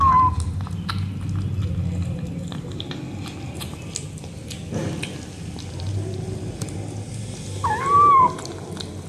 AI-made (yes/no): no